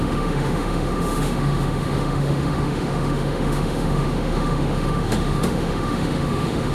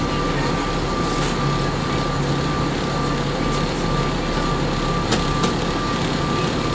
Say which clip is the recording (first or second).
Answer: second